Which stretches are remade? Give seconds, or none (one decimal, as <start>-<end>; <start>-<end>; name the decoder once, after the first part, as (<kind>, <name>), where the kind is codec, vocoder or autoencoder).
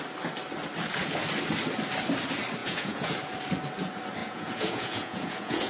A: 2.6-3.1 (vocoder, Vocos); 4.2-5.7